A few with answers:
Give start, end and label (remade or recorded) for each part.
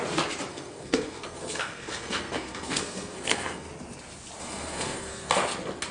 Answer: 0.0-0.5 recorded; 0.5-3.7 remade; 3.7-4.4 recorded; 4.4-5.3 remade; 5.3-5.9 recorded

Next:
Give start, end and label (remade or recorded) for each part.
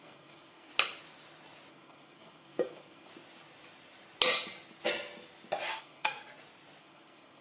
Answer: 0.0-0.7 remade; 0.7-1.7 recorded; 1.7-3.1 remade; 3.1-5.8 recorded; 5.8-6.3 remade; 6.3-6.8 recorded; 6.8-7.4 remade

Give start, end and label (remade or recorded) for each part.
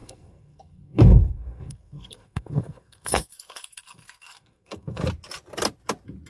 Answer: 0.0-5.0 remade; 5.0-6.3 recorded